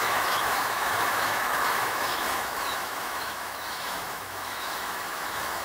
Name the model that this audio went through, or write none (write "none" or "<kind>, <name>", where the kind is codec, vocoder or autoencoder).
autoencoder, DAC-VAE